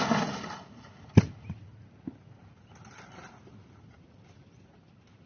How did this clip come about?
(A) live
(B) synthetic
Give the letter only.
A